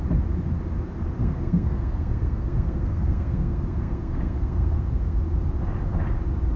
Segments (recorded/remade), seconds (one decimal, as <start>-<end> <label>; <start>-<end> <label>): 0.0-1.2 recorded; 1.2-5.2 remade; 5.2-6.6 recorded